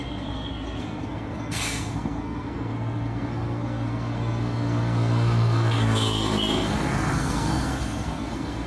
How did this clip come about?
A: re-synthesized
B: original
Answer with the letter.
A